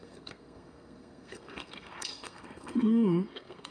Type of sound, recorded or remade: remade